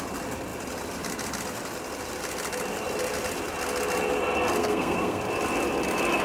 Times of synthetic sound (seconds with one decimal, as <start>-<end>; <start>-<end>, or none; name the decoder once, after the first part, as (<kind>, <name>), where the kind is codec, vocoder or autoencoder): 4.6-5.2 (codec, SNAC)